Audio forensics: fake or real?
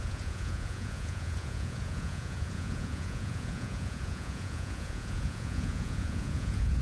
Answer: fake